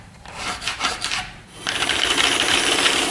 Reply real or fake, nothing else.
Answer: fake